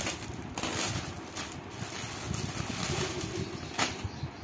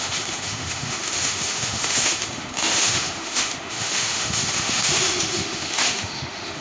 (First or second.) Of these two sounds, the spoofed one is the second